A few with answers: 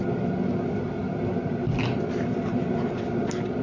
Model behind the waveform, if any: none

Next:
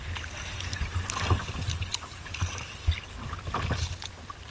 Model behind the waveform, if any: none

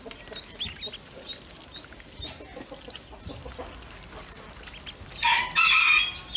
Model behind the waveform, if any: none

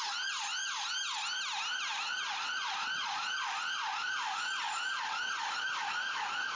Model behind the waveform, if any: none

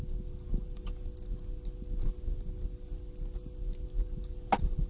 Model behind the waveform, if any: none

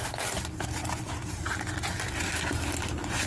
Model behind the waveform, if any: none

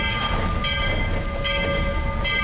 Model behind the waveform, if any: none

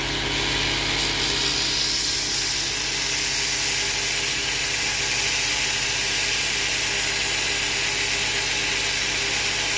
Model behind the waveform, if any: none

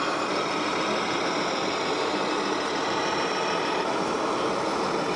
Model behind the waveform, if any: none